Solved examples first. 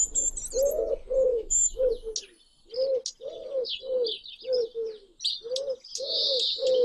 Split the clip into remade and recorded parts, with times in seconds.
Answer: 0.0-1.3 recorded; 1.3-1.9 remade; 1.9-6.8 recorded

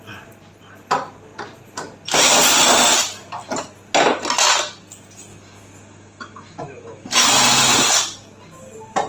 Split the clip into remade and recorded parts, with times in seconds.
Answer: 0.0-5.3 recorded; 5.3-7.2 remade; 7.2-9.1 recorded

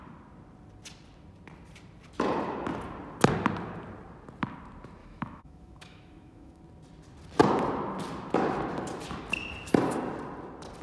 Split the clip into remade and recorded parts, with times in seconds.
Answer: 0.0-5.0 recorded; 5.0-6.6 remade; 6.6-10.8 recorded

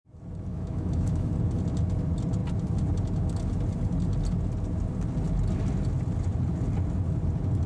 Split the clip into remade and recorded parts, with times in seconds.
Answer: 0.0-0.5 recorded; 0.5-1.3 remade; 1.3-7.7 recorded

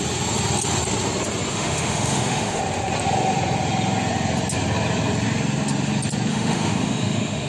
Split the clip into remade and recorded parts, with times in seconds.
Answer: 0.0-1.5 recorded; 1.5-2.6 remade; 2.6-6.3 recorded; 6.3-7.5 remade